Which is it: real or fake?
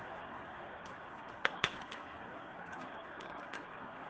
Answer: fake